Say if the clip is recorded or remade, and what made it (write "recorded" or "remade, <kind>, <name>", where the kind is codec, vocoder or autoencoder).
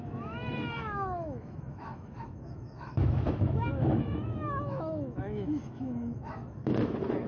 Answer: remade, autoencoder, DAC-VAE